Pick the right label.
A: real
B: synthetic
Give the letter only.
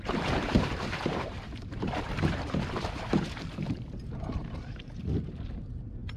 B